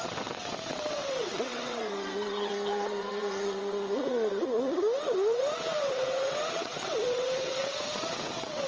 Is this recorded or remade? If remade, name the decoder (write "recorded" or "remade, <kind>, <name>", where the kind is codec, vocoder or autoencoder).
remade, vocoder, WaveNeXt